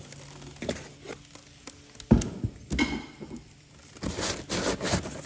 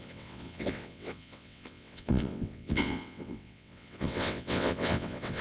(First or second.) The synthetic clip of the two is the second